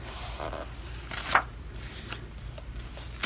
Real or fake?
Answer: real